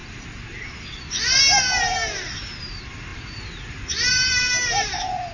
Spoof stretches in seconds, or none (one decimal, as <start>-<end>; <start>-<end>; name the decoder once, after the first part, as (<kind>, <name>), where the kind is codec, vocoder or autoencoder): 2.3-5.3 (vocoder, BigVGAN v2)

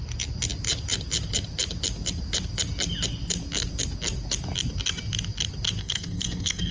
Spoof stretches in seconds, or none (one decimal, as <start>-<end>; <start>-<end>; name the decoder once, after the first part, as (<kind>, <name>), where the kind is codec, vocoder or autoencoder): 5.8-6.7 (codec, SNAC)